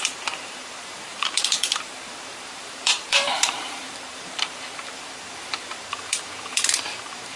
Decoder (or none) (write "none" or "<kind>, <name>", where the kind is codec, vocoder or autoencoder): vocoder, BigVGAN v2